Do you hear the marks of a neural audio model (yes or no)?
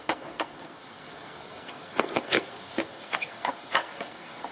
yes